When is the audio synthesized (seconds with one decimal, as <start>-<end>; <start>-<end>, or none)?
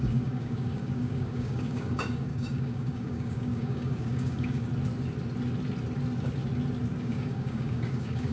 0.0-4.7; 7.0-8.3